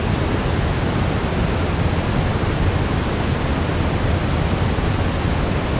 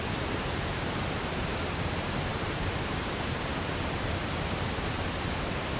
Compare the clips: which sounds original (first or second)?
first